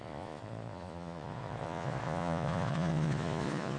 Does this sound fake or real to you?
fake